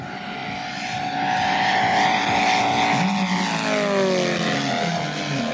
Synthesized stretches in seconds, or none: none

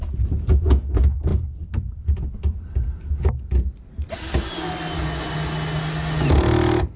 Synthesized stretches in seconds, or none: none

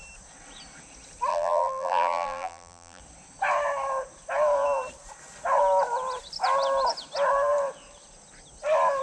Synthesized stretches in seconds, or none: 1.3-3.0 (vocoder, BigVGAN v2)

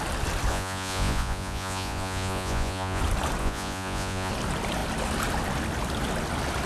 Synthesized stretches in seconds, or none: 0.5-3.0 (vocoder, Vocos); 3.4-4.3